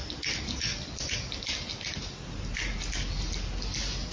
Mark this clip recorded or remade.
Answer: recorded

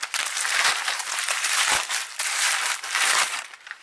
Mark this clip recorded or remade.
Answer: remade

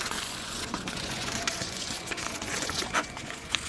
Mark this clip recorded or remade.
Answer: remade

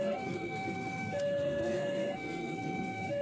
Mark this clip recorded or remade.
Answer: remade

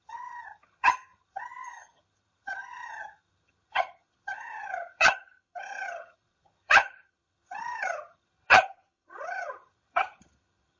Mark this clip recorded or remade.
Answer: remade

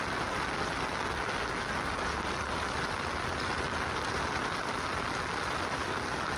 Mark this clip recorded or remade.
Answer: recorded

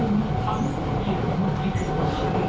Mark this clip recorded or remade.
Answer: recorded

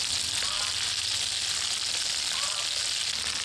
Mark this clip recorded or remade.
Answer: recorded